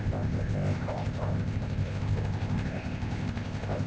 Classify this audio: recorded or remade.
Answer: remade